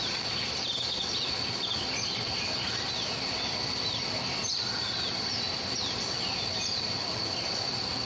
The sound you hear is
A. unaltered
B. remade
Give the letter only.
B